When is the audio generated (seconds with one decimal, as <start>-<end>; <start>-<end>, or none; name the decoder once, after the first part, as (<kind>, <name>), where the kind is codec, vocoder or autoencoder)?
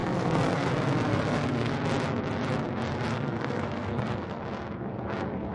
0.0-0.7 (codec, SNAC); 1.1-1.7; 3.1-4.4